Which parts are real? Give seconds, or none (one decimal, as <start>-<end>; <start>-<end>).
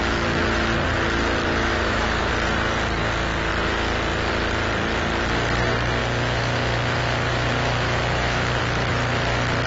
0.0-1.7; 2.3-6.0; 8.6-9.7